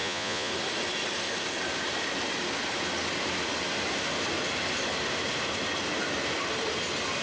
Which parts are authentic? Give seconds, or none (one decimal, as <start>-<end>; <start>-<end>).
0.5-7.2